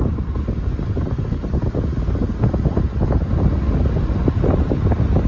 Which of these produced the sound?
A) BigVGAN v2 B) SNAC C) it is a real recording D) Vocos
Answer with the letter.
C